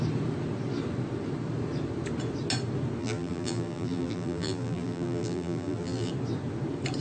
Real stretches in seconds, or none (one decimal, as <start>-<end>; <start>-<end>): 0.0-3.0; 6.1-7.0